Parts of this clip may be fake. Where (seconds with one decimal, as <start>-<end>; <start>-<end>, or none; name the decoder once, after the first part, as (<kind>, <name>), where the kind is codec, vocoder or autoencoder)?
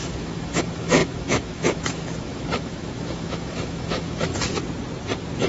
0.0-4.3 (autoencoder, DAC-VAE)